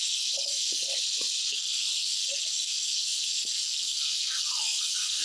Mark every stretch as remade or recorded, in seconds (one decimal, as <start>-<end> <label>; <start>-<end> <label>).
0.0-0.9 remade; 0.9-1.5 recorded; 1.5-5.2 remade